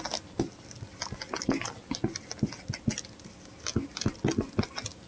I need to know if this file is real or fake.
real